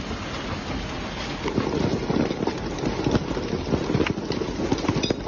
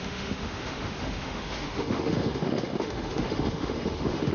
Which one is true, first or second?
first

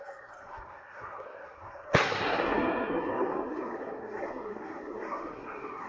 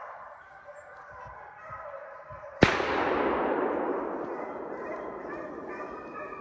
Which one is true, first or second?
second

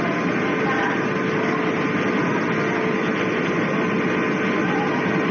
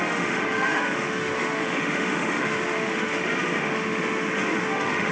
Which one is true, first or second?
first